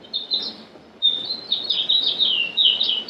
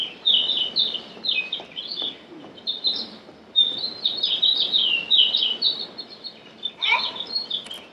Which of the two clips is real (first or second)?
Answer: first